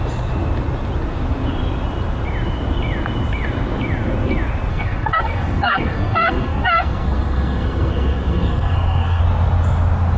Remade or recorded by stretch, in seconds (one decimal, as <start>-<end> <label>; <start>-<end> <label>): 0.0-4.7 recorded; 4.7-9.2 remade; 9.2-10.2 recorded

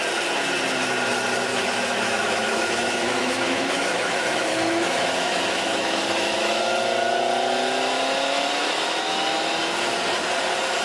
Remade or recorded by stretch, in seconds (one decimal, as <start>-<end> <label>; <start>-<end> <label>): 0.0-1.5 recorded; 1.5-6.6 remade; 6.6-8.5 recorded; 8.5-9.0 remade; 9.0-10.8 recorded